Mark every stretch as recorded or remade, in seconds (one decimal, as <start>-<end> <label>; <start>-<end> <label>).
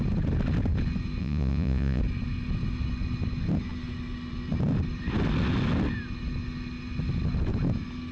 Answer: 0.0-1.2 recorded; 1.2-2.0 remade; 2.0-8.1 recorded